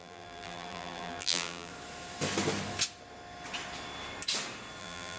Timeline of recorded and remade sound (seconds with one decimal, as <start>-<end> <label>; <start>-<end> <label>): 0.0-1.7 remade; 1.7-4.8 recorded; 4.8-5.2 remade